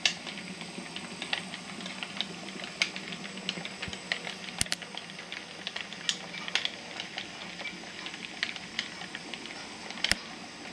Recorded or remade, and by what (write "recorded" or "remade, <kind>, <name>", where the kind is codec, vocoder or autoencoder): recorded